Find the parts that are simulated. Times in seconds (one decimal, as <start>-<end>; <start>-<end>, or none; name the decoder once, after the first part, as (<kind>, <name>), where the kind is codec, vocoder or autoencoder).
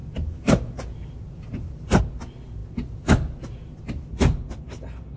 0.0-2.0 (vocoder, BigVGAN v2)